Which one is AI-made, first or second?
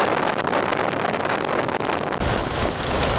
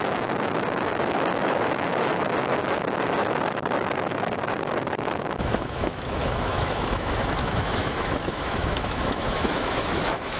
second